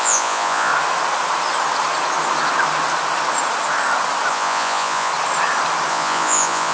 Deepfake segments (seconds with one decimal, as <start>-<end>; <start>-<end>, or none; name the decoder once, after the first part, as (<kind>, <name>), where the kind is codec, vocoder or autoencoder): 0.0-0.7 (vocoder, Vocos); 4.3-5.1; 5.9-6.7